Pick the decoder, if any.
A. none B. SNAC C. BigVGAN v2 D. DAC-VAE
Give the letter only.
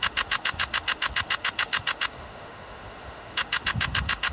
D